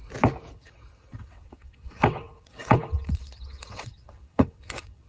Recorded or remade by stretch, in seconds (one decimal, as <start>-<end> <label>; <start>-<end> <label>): 0.0-0.5 recorded; 0.5-5.1 remade